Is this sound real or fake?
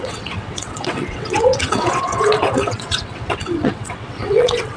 fake